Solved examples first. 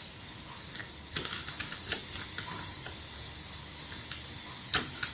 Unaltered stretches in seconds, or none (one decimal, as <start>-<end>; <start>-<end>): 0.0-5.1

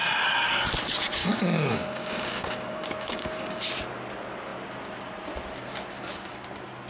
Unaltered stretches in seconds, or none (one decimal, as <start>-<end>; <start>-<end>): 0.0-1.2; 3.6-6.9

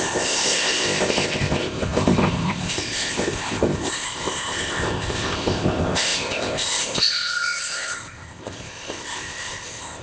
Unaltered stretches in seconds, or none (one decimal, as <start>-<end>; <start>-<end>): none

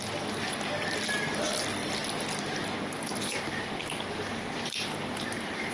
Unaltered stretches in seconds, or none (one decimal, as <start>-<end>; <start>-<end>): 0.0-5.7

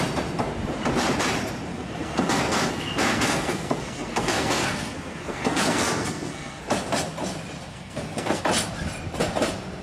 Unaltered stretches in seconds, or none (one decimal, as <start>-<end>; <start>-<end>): 0.0-1.7; 6.7-7.7; 8.4-9.8

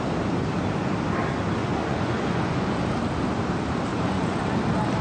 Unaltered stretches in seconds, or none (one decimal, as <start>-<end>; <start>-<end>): 0.0-1.6; 2.8-3.9; 4.4-5.0

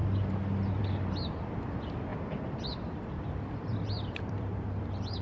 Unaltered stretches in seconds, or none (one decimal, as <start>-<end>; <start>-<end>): 0.0-2.1